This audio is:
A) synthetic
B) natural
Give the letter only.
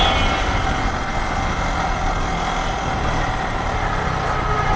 B